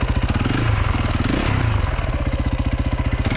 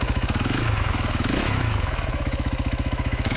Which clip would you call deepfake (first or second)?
second